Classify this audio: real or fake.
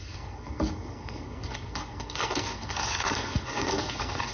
fake